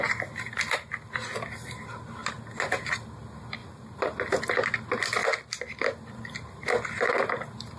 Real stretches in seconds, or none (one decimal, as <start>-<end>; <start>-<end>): 0.0-7.8